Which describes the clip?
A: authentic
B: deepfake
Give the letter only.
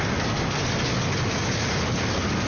A